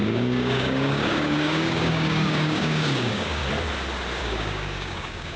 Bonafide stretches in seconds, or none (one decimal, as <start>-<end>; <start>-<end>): 3.4-4.2